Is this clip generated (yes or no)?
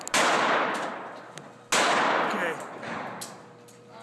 no